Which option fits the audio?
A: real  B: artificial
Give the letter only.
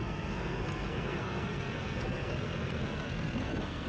B